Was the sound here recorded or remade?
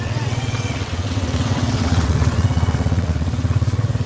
remade